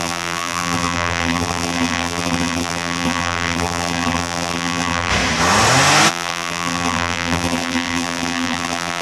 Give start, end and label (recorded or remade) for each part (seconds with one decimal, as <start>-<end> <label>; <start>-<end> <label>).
0.0-5.1 remade; 5.1-6.1 recorded; 6.1-9.0 remade